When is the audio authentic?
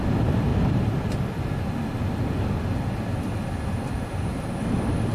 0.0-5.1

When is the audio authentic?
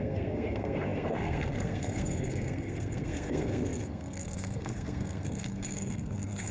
none